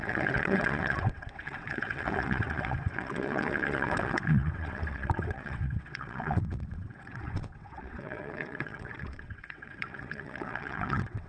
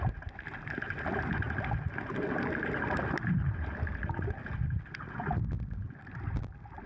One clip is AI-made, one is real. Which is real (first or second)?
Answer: second